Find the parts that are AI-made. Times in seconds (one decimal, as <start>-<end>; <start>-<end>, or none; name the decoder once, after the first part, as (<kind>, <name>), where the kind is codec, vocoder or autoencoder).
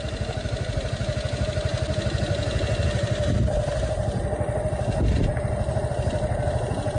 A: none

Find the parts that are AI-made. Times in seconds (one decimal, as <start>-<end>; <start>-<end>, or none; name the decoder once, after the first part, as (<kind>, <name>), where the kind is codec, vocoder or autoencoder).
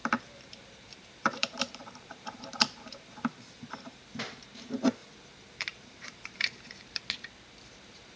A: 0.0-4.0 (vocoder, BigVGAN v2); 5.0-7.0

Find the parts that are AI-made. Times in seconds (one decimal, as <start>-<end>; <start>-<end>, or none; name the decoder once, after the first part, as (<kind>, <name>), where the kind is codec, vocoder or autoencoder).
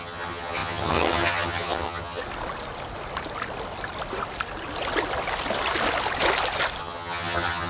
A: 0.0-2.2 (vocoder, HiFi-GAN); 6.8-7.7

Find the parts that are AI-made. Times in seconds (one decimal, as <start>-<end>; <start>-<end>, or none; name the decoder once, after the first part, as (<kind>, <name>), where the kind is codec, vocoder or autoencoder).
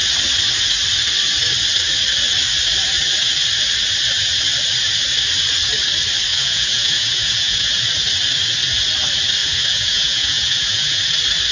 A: 6.3-7.8 (vocoder, Vocos); 9.4-11.0